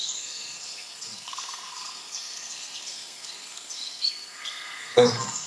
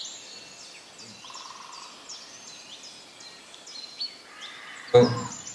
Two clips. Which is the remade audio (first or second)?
first